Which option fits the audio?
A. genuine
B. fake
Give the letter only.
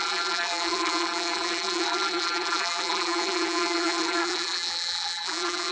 B